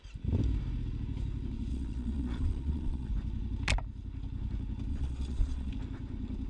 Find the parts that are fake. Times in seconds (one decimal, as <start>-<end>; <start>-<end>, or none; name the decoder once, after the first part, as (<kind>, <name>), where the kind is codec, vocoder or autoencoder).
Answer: 1.7-3.1 (vocoder, Vocos); 4.9-5.7